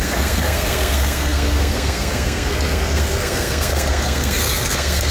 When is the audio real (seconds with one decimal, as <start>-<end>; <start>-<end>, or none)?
none